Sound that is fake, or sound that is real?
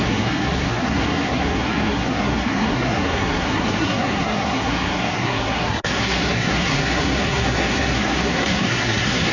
fake